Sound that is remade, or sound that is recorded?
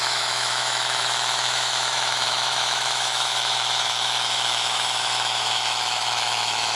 remade